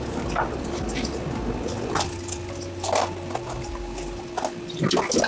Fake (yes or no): no